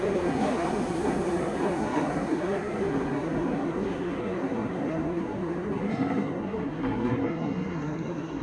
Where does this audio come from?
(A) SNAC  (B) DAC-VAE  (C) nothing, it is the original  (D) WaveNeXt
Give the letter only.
A